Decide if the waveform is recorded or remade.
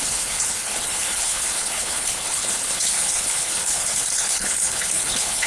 remade